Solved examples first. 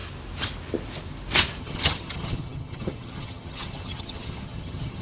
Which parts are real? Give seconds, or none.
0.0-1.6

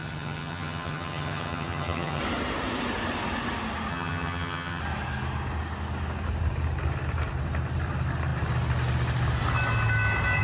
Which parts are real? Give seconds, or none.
2.2-3.9; 4.8-10.4